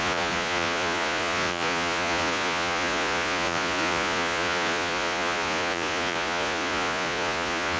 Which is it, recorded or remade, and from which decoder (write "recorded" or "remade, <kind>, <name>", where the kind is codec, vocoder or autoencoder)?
remade, vocoder, Vocos